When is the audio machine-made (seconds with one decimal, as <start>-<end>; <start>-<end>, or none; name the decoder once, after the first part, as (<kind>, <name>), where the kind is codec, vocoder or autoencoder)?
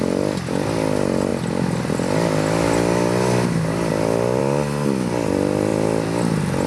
none